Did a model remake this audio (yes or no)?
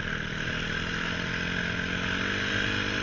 no